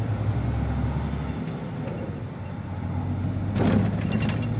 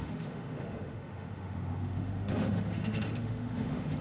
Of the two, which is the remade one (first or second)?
second